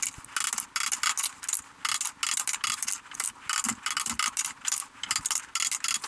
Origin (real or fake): real